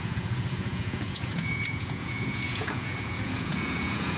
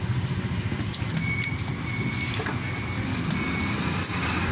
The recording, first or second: second